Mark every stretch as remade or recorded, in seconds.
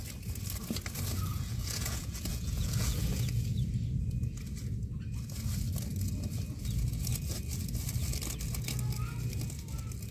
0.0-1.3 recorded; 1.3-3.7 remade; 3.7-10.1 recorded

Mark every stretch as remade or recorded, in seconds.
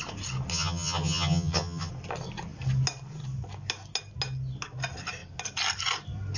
0.0-0.5 recorded; 0.5-1.9 remade; 1.9-6.4 recorded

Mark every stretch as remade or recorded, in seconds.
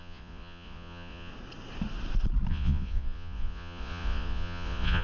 0.0-1.3 remade; 1.3-2.5 recorded; 2.5-5.0 remade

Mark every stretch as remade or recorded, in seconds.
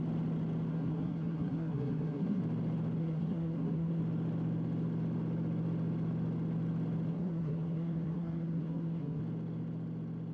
0.0-0.7 recorded; 0.7-2.4 remade; 2.4-3.0 recorded; 3.0-4.0 remade; 4.0-7.1 recorded; 7.1-9.2 remade; 9.2-10.3 recorded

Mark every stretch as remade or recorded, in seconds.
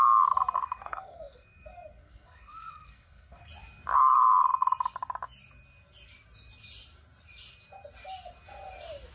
0.0-0.6 recorded; 0.6-3.5 remade; 3.5-9.1 recorded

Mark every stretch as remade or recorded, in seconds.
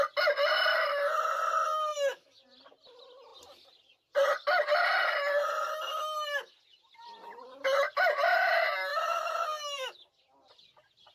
0.0-1.9 recorded; 1.9-2.4 remade; 2.4-8.9 recorded; 8.9-10.1 remade; 10.1-11.1 recorded